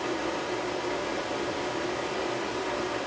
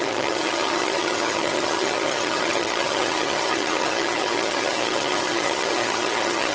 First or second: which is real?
first